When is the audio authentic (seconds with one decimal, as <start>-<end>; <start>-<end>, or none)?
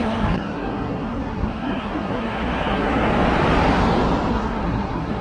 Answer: 3.1-4.3